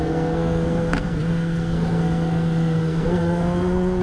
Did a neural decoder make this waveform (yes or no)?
yes